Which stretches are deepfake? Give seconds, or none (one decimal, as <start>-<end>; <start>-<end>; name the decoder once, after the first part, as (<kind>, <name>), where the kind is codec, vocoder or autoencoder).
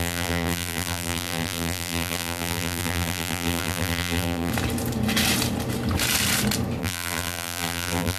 0.0-4.5 (vocoder, BigVGAN v2); 6.8-8.2